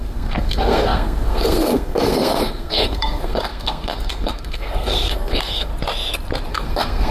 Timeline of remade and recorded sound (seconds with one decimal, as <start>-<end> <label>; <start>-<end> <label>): 0.0-5.7 remade; 5.7-6.5 recorded; 6.5-7.1 remade

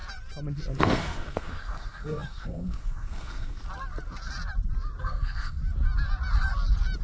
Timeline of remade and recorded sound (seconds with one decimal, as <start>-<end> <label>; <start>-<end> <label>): 0.0-0.8 recorded; 0.8-3.6 remade; 3.6-5.0 recorded; 5.0-5.6 remade; 5.6-7.0 recorded

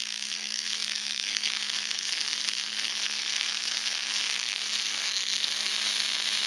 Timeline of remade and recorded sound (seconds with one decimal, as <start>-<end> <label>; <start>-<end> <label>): 0.0-5.7 remade; 5.7-6.5 recorded

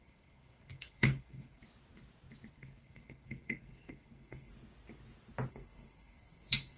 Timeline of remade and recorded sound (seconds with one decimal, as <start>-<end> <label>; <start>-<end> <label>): 0.0-1.6 remade; 1.6-2.5 recorded; 2.5-4.5 remade; 4.5-5.5 recorded; 5.5-6.8 remade